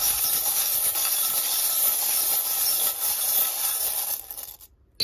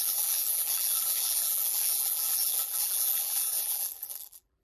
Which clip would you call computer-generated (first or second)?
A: second